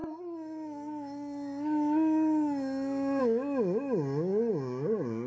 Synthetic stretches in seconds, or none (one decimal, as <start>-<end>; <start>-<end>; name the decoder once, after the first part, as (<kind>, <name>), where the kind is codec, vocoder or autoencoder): none

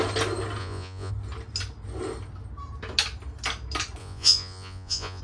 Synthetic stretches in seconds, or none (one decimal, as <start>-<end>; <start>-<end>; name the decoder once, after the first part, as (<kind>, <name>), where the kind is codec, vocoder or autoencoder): 0.6-1.1 (vocoder, Vocos); 4.0-5.2

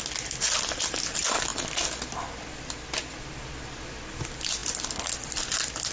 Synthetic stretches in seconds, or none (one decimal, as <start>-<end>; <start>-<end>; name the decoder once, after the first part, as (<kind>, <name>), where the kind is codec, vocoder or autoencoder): none